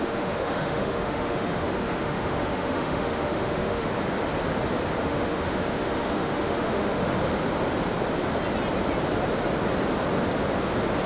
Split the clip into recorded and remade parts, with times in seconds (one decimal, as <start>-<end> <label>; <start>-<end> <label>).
0.0-3.9 remade; 3.9-5.0 recorded; 5.0-7.1 remade; 7.1-11.1 recorded